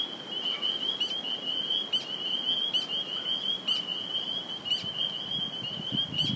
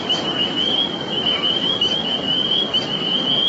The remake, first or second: second